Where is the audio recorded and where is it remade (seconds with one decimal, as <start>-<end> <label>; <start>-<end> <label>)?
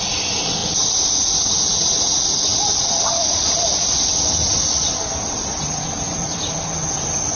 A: 0.0-7.4 recorded